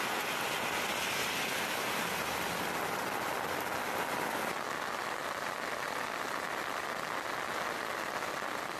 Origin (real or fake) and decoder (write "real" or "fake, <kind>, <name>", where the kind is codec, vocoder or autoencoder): real